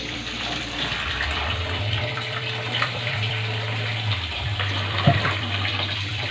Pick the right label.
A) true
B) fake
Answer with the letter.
B